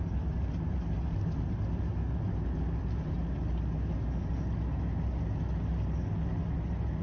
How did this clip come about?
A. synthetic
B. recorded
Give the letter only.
B